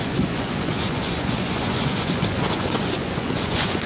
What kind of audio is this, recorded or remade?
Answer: remade